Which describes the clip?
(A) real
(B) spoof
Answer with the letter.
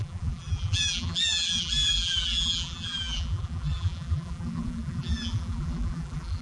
B